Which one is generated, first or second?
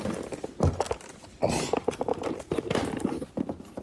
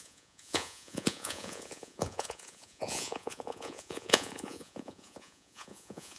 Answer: second